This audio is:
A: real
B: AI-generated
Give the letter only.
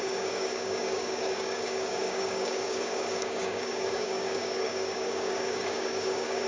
B